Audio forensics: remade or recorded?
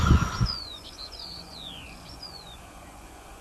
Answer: remade